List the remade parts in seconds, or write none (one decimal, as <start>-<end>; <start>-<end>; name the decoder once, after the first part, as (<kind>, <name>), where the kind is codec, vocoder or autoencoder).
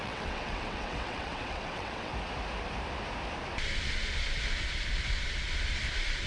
0.0-2.1 (vocoder, WaveNeXt)